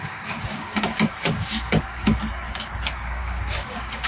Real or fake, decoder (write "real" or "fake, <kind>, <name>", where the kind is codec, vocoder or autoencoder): fake, codec, DAC